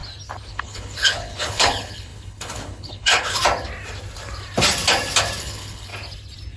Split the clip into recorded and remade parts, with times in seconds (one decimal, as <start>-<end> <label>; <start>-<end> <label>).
0.0-0.5 recorded; 0.5-3.4 remade; 3.4-5.4 recorded; 5.4-5.9 remade; 5.9-6.6 recorded